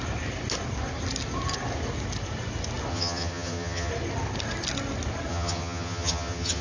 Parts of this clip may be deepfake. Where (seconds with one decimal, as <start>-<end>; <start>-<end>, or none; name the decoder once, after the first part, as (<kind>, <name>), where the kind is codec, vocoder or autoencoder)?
2.9-3.9 (vocoder, HiFi-GAN); 5.3-6.6

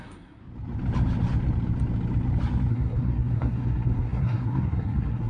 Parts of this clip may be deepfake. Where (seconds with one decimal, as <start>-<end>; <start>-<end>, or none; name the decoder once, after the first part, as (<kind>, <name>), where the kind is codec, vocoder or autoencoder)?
0.0-0.4 (codec, SNAC); 2.7-5.3

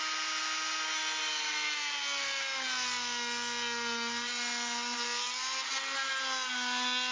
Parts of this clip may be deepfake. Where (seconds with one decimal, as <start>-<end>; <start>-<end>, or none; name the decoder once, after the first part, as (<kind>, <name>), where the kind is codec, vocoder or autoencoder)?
none

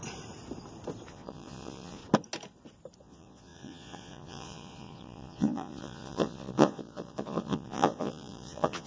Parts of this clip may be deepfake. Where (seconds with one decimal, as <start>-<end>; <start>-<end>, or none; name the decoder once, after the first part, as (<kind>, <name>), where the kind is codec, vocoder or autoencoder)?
1.1-2.0 (vocoder, Vocos); 3.0-8.9

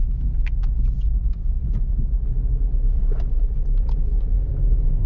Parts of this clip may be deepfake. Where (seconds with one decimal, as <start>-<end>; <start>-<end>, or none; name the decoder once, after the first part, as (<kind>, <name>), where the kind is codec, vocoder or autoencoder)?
none

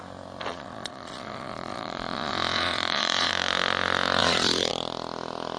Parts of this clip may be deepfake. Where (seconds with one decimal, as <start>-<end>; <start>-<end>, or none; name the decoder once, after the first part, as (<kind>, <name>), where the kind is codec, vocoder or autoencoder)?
0.5-3.3 (vocoder, Vocos); 4.2-4.7